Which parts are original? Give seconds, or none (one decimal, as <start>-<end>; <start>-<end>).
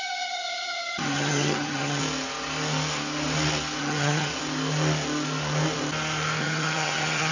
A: 2.0-3.8; 4.3-6.4